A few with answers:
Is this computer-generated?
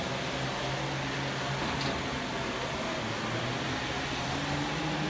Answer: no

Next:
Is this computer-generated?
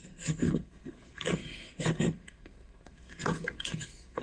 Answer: yes